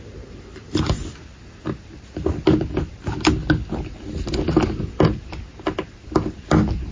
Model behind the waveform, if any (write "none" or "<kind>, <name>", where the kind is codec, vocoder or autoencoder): none